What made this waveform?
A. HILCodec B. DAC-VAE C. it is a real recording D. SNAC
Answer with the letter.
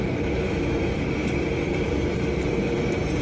C